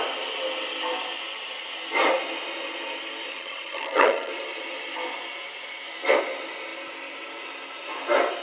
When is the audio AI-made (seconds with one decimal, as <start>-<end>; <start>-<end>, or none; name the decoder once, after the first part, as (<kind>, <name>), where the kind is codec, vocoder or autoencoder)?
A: 3.3-4.3 (vocoder, HiFi-GAN)